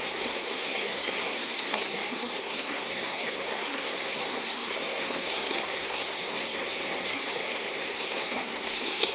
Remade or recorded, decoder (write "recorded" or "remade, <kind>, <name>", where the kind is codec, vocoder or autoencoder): remade, codec, SNAC